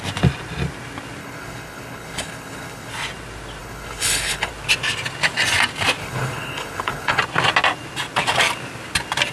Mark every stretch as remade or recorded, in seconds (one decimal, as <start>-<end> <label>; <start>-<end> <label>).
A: 0.0-1.2 recorded; 1.2-2.9 remade; 2.9-3.6 recorded; 3.6-4.5 remade; 4.5-6.0 recorded; 6.0-7.2 remade; 7.2-9.3 recorded